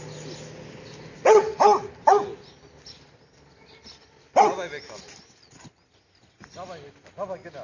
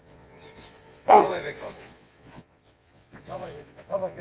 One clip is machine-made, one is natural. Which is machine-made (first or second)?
second